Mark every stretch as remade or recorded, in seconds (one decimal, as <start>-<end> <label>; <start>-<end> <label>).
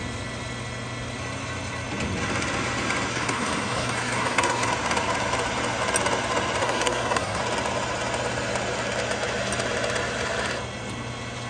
0.0-3.1 recorded; 3.1-4.7 remade; 4.7-6.6 recorded; 6.6-7.4 remade; 7.4-11.5 recorded